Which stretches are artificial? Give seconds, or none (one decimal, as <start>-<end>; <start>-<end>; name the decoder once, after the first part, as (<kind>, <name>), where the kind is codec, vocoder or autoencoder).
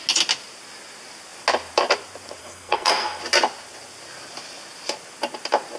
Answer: 2.4-3.2 (codec, SNAC)